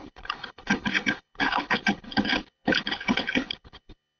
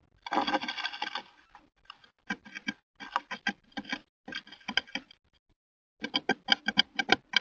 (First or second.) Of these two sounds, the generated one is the first